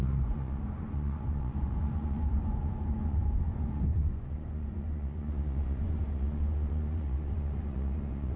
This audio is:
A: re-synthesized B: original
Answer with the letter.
A